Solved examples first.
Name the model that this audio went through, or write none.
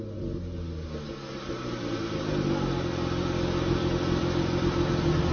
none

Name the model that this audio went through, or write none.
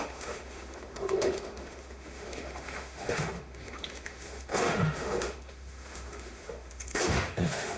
autoencoder, DAC-VAE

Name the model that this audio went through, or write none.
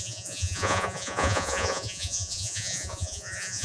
vocoder, Vocos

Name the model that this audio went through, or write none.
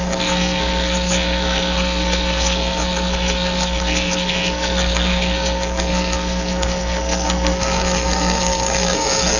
codec, SNAC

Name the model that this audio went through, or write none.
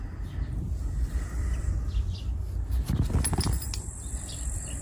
vocoder, BigVGAN v2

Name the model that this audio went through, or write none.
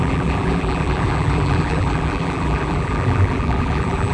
vocoder, BigVGAN v2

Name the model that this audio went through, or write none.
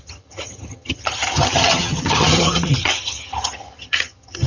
vocoder, HiFi-GAN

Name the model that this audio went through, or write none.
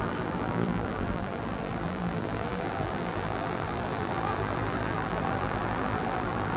vocoder, BigVGAN v2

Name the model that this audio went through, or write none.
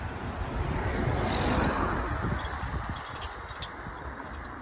vocoder, BigVGAN v2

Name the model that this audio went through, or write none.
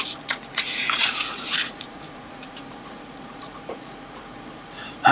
vocoder, Vocos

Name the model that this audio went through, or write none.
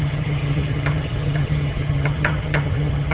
vocoder, HiFi-GAN